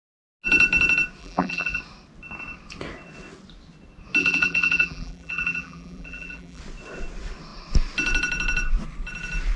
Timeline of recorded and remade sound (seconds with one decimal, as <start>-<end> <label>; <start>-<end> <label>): 0.0-1.2 recorded; 1.2-1.8 remade; 1.8-4.2 recorded; 4.2-6.6 remade; 6.6-9.6 recorded